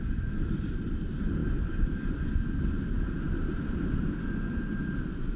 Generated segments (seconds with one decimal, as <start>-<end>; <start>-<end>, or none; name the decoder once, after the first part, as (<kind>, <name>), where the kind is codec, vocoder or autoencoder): none